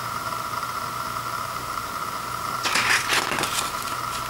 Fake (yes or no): no